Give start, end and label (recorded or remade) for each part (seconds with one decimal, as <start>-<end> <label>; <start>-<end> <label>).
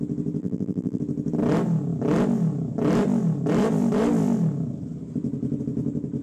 0.0-0.4 recorded; 0.4-1.0 remade; 1.0-6.2 recorded